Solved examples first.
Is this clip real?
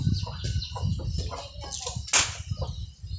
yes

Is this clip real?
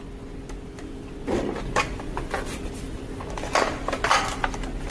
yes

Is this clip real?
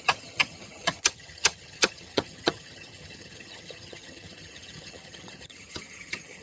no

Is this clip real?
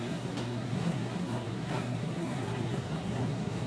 no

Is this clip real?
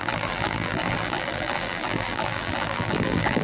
no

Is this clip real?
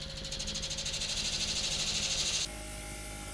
yes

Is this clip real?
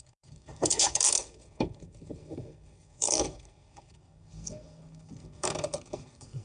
no